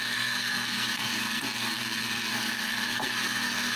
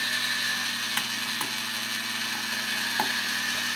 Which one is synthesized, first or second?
first